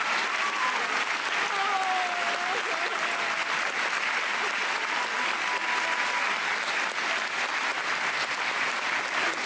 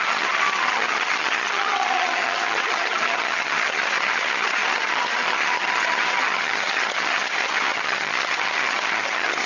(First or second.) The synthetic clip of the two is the second